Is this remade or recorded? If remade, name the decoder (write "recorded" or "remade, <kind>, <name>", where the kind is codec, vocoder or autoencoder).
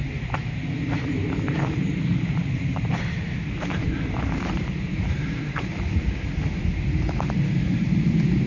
remade, vocoder, BigVGAN v2